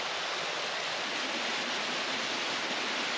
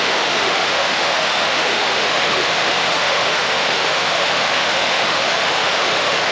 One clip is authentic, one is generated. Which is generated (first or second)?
second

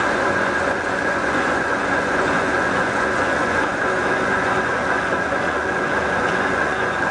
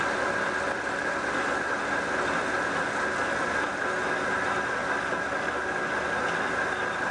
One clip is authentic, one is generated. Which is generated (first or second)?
first